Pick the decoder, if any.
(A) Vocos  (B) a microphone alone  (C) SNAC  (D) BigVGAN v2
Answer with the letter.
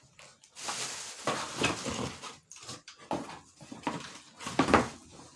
B